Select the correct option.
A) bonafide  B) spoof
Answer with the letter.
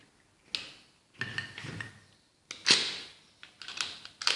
A